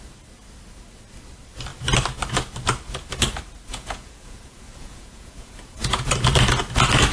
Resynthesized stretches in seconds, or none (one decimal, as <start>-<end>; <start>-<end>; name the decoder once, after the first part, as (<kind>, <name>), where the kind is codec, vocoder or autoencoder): 3.7-6.1 (vocoder, Vocos)